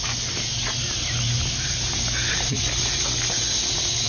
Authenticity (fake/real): real